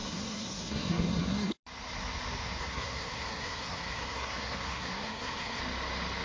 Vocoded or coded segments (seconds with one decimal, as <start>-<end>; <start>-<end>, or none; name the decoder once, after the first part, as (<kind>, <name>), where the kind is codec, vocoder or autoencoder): 0.0-1.6 (codec, SNAC); 2.6-5.6